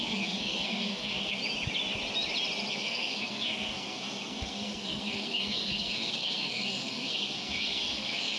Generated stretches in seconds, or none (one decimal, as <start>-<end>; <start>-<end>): 0.0-1.4; 2.7-8.4